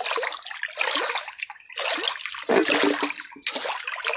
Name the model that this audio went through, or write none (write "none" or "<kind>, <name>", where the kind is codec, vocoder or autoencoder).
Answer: none